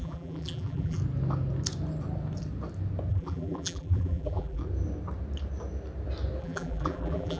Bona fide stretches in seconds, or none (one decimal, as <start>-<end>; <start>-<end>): 1.0-3.1; 4.6-6.4